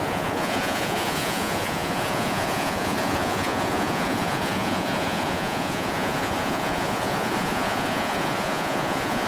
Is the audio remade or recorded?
remade